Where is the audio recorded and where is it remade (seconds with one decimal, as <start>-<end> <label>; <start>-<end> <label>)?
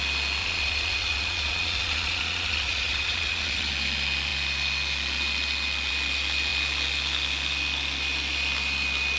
0.0-0.4 recorded; 0.4-3.7 remade; 3.7-9.2 recorded